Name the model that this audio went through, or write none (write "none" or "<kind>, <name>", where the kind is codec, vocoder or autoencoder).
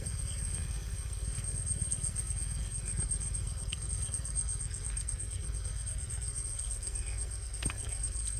codec, SNAC